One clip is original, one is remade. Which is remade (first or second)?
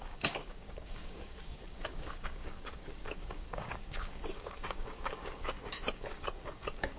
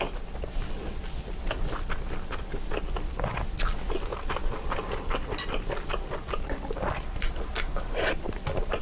first